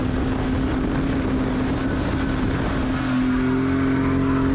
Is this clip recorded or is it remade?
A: recorded